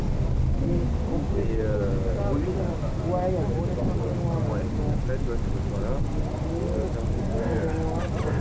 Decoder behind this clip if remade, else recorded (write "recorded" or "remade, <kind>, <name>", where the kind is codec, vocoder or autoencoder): recorded